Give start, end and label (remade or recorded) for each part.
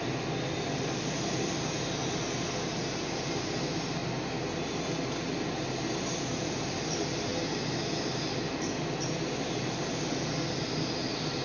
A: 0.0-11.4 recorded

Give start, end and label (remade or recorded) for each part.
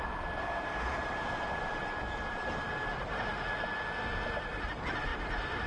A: 0.0-1.8 remade; 1.8-2.3 recorded; 2.3-3.3 remade; 3.3-4.4 recorded; 4.4-5.7 remade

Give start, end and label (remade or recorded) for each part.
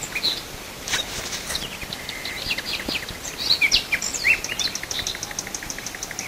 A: 0.0-1.8 recorded; 1.8-4.5 remade; 4.5-6.3 recorded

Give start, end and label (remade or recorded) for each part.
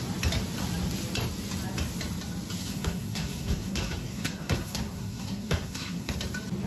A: 0.0-2.6 recorded; 2.6-6.1 remade; 6.1-6.7 recorded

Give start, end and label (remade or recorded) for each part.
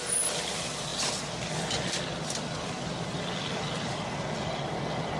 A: 0.0-5.2 remade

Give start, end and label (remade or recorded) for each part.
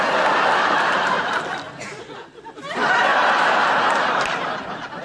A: 0.0-3.1 recorded; 3.1-4.1 remade; 4.1-5.0 recorded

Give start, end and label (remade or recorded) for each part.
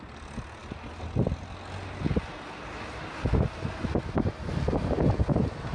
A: 0.0-5.7 recorded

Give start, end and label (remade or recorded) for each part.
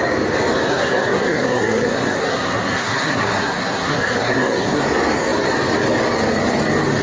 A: 0.0-0.7 recorded; 0.7-4.8 remade; 4.8-7.0 recorded